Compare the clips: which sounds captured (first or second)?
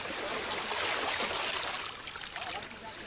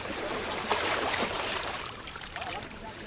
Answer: first